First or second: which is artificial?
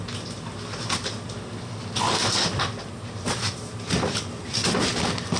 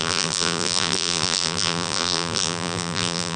second